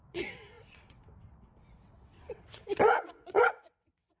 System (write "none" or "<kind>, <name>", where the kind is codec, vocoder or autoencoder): vocoder, WaveNeXt